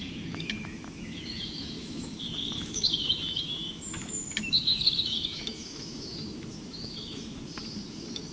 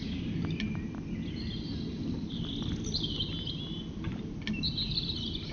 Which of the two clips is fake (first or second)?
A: first